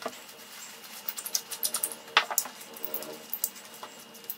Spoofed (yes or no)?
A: no